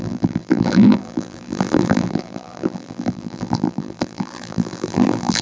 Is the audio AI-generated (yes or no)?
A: yes